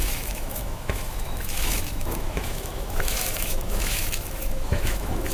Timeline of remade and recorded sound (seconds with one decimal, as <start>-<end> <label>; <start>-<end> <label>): 0.0-5.3 remade